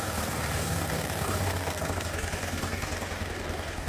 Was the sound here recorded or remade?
remade